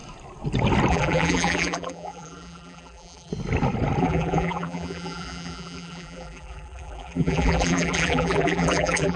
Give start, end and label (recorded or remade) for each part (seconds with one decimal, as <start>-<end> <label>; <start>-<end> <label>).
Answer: 0.0-0.9 recorded; 0.9-3.3 remade; 3.3-4.0 recorded; 4.0-9.2 remade